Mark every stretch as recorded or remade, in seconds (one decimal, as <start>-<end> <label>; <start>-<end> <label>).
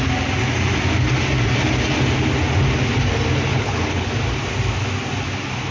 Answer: 0.0-3.5 recorded; 3.5-4.1 remade; 4.1-5.7 recorded